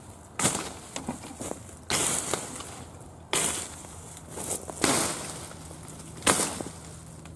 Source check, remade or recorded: recorded